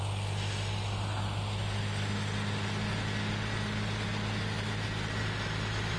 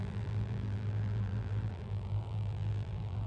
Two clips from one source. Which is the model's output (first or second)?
second